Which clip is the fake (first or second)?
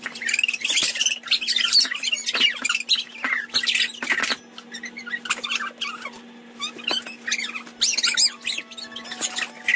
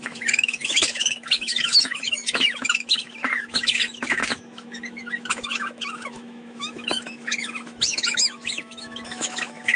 second